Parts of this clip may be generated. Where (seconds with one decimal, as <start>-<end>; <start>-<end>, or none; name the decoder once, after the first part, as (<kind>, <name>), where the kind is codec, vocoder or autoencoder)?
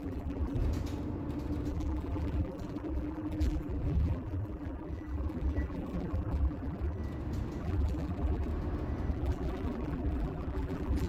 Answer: 0.0-0.6 (vocoder, BigVGAN v2); 1.7-7.0; 7.6-8.5; 9.1-11.1